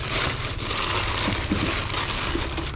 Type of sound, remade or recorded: recorded